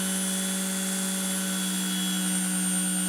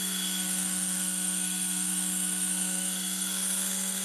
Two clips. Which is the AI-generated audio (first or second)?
second